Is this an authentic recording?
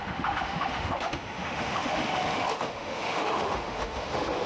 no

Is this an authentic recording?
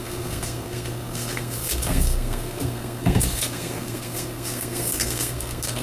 no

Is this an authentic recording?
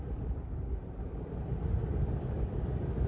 yes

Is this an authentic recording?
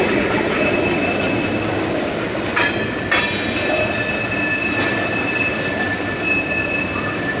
yes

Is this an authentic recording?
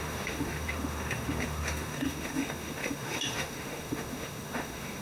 no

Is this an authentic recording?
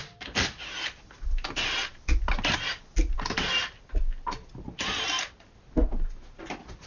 yes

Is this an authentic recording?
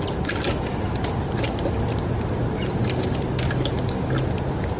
yes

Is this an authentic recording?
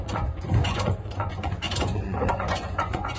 no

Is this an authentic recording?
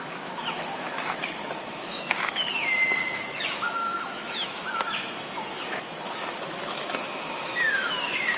no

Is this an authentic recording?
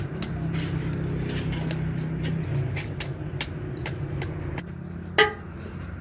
yes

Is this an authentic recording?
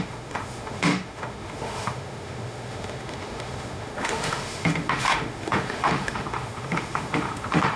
no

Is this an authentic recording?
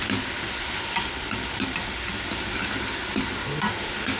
yes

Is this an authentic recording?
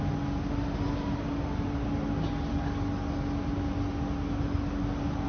yes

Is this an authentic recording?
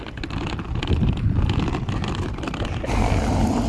yes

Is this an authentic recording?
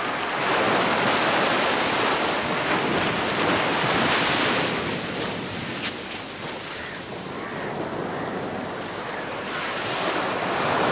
yes